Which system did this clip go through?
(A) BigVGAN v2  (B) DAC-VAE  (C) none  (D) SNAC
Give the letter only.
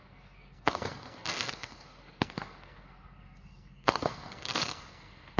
D